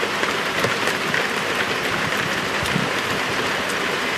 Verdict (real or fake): fake